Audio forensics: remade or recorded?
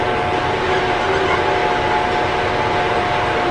recorded